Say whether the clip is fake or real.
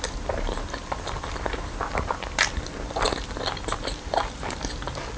real